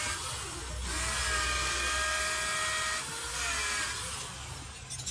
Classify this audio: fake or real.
real